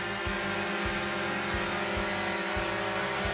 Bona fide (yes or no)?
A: yes